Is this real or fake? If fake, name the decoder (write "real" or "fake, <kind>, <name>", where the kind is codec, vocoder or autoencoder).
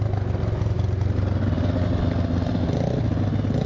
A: real